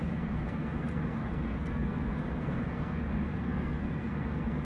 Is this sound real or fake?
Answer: fake